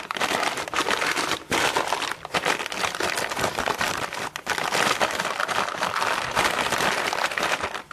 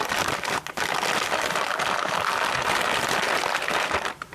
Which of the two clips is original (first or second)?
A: second